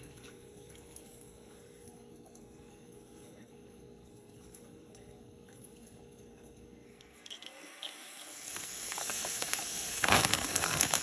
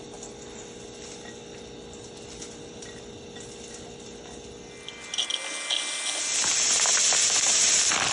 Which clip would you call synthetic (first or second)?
first